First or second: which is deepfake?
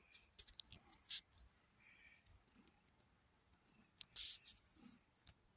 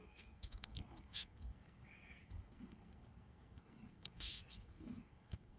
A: second